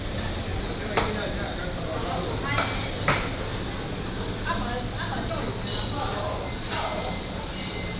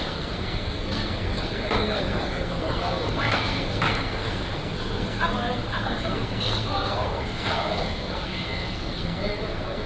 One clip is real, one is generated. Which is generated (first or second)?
second